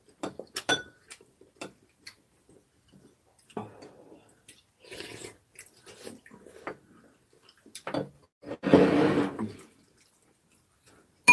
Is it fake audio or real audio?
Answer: real